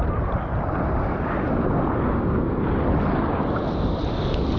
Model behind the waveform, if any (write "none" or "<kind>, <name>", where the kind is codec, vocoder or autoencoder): none